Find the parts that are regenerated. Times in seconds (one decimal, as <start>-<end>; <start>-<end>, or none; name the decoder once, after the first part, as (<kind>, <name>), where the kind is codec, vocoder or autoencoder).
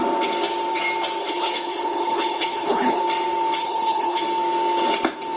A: 1.2-3.0 (codec, HILCodec); 3.6-4.2